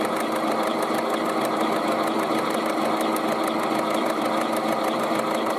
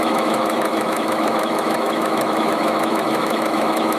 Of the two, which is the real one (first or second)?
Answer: first